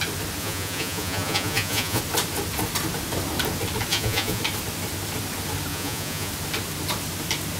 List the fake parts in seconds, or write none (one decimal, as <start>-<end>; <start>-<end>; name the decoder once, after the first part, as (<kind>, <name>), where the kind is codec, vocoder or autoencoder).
0.4-2.0 (vocoder, Vocos); 3.9-4.4; 5.7-6.3